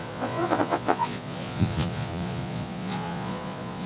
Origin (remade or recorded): remade